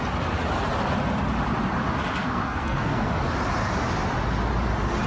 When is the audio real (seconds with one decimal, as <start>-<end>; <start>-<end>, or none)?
0.0-2.2; 3.1-5.1